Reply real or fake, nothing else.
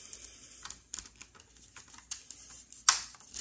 real